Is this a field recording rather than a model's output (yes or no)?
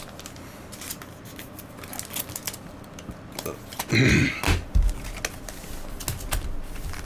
yes